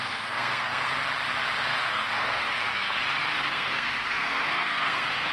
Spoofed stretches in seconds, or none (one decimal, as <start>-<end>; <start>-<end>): 0.0-0.9; 1.7-2.9; 3.3-5.3